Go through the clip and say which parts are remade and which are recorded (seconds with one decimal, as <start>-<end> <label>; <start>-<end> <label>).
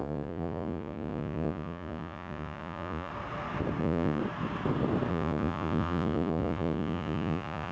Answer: 0.0-3.1 remade; 3.1-3.8 recorded; 3.8-4.2 remade; 4.2-5.1 recorded; 5.1-7.7 remade